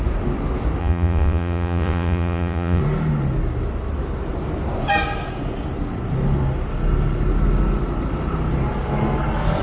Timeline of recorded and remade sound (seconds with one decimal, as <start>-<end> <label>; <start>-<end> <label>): 0.0-0.8 recorded; 0.8-2.8 remade; 2.8-9.6 recorded